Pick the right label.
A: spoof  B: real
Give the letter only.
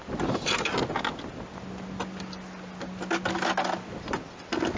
B